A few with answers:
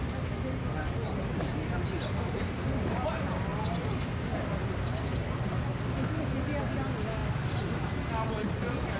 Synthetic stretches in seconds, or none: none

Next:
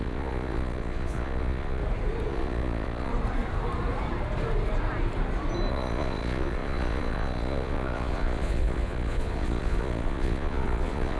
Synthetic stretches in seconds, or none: 0.0-1.8 (vocoder, Vocos); 2.3-3.1; 5.7-11.2

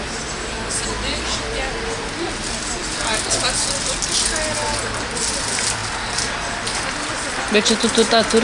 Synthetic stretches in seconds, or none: none

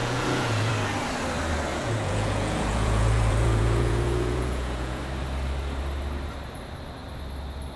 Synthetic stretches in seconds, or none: 0.0-0.7 (vocoder, Vocos); 1.7-5.0

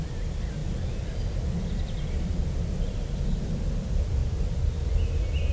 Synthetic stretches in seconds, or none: none

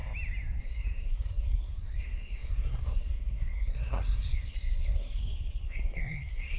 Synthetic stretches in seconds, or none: 0.6-6.6 (codec, SNAC)

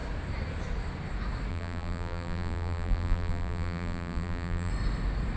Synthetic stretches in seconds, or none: 1.5-4.7 (vocoder, BigVGAN v2)